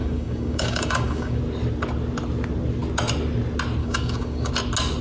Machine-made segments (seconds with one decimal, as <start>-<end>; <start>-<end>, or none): 0.0-1.4; 3.8-4.5